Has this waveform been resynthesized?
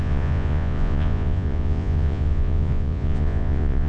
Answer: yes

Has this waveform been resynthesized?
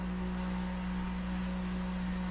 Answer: no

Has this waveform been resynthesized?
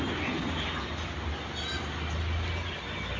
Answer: no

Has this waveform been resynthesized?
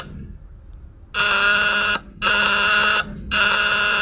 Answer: no